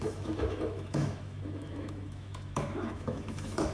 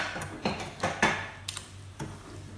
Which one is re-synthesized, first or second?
first